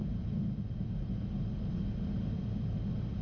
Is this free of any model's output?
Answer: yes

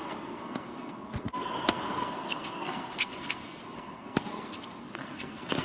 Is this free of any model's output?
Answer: no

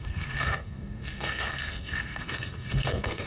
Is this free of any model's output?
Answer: no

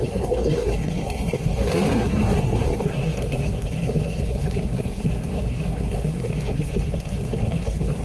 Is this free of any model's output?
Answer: no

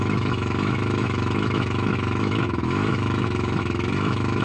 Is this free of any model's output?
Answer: no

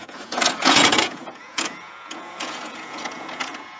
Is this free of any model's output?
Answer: no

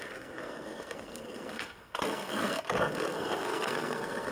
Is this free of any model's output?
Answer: no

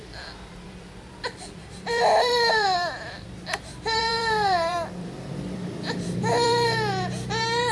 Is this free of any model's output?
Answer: no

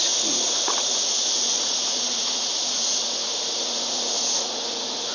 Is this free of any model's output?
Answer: no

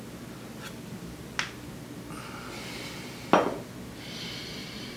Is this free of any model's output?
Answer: yes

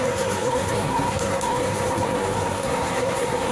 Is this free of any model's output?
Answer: no